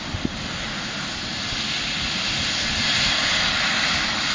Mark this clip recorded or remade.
recorded